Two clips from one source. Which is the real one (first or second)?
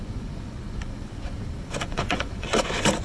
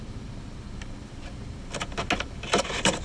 second